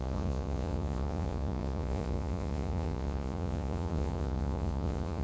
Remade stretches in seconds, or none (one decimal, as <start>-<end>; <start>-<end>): 0.0-5.2